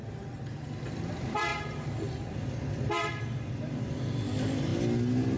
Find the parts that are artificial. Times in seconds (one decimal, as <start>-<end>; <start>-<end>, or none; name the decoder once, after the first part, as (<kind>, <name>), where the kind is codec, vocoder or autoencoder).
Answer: 1.0-4.7 (vocoder, BigVGAN v2)